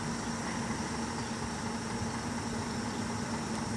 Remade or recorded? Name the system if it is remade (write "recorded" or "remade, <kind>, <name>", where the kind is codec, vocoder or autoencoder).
recorded